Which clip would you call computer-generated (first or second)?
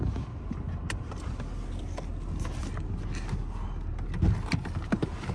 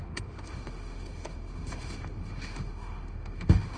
second